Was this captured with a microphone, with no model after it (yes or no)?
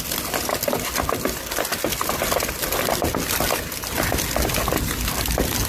yes